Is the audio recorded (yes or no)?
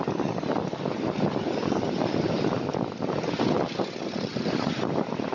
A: yes